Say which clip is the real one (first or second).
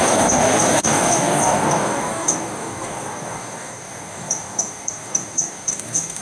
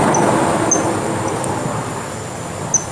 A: second